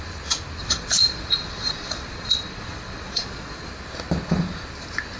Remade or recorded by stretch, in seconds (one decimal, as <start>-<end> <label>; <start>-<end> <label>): 0.0-0.6 recorded; 0.6-3.7 remade; 3.7-5.2 recorded